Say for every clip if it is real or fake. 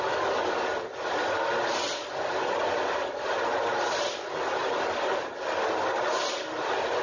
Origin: real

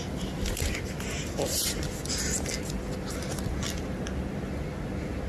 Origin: real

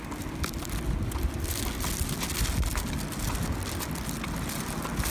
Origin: real